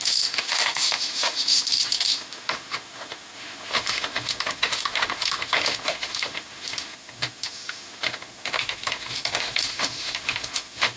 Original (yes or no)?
no